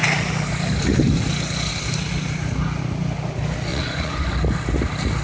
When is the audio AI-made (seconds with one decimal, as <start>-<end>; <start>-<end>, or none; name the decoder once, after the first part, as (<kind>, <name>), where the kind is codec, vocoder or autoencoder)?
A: 3.7-4.3 (vocoder, Vocos)